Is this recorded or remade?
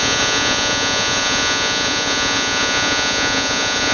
remade